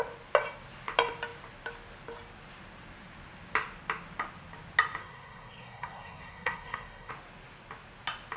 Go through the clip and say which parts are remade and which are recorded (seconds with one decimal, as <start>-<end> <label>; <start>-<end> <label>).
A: 0.0-5.0 recorded; 5.0-7.1 remade; 7.1-8.4 recorded

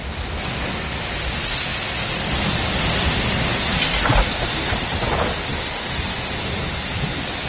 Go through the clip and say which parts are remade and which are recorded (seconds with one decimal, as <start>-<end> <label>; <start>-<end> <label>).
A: 0.0-7.5 recorded

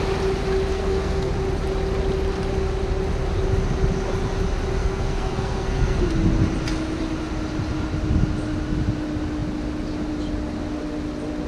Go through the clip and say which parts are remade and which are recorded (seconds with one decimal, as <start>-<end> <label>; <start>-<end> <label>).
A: 0.0-0.7 recorded; 0.7-1.3 remade; 1.3-4.8 recorded; 4.8-6.0 remade; 6.0-11.5 recorded

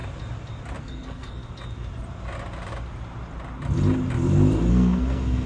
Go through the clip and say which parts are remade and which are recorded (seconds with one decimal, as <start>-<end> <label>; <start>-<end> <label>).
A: 0.0-0.8 recorded; 0.8-1.4 remade; 1.4-4.7 recorded; 4.7-5.5 remade

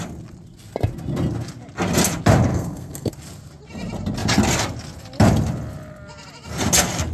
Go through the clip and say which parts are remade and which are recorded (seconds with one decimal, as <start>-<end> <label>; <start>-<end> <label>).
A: 0.0-2.5 recorded; 2.5-3.1 remade; 3.1-7.1 recorded

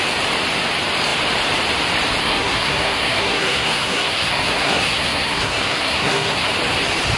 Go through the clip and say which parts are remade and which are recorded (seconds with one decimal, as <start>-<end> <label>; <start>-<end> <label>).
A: 0.0-2.2 recorded; 2.2-6.5 remade; 6.5-7.2 recorded

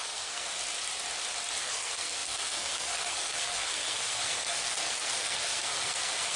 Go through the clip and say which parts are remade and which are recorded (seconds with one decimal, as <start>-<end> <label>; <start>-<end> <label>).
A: 0.0-0.5 remade; 0.5-1.6 recorded; 1.6-6.4 remade